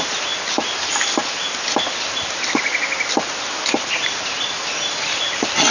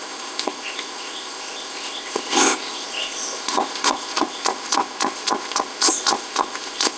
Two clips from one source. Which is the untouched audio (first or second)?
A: first